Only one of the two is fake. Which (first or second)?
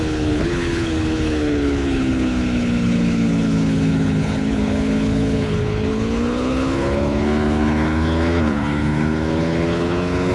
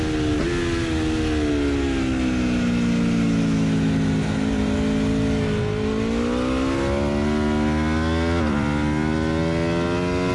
first